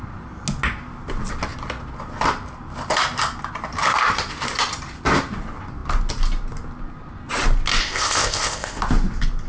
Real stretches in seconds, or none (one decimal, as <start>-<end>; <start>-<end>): 0.0-7.8; 8.8-9.5